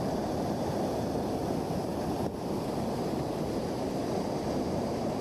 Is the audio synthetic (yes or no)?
no